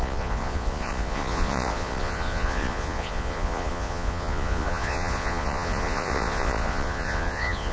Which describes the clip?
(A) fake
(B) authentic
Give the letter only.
A